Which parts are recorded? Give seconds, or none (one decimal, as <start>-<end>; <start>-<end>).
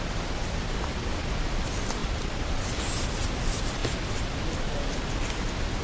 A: 0.0-2.0; 2.8-5.8